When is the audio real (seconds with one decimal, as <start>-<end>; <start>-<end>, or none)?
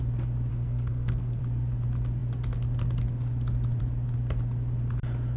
0.0-0.5; 1.4-5.4